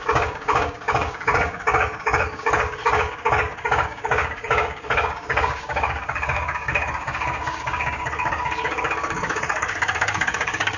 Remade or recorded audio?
remade